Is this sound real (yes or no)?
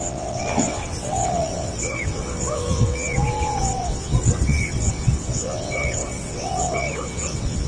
no